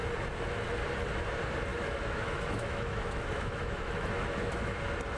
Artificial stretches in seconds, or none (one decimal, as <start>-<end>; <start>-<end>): 1.7-4.8